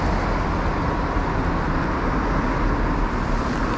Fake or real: real